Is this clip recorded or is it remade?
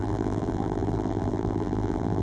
remade